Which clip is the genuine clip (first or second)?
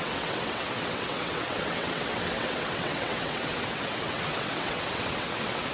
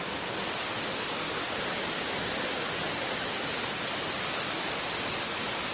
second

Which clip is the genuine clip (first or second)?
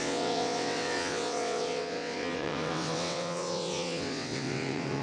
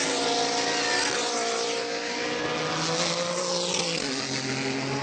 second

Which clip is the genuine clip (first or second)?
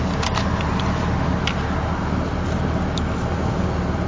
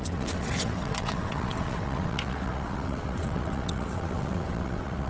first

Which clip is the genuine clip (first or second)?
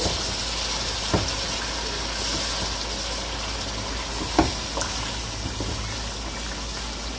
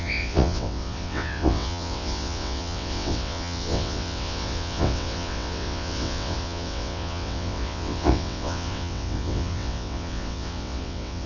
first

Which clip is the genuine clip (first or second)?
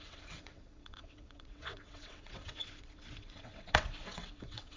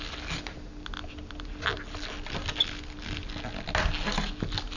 second